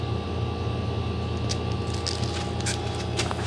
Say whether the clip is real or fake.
real